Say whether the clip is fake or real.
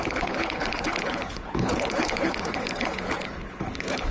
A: fake